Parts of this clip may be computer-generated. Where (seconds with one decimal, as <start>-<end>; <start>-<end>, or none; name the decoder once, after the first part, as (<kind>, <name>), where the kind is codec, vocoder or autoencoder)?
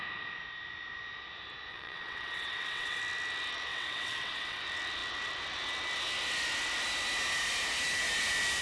1.7-3.0 (vocoder, WaveNeXt); 3.7-4.6